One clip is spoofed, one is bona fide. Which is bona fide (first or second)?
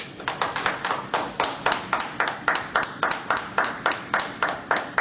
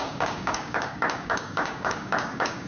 first